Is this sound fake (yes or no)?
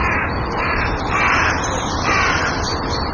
no